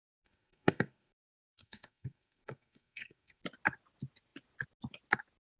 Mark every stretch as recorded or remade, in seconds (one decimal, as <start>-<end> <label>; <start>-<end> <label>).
0.0-3.4 remade; 3.4-5.6 recorded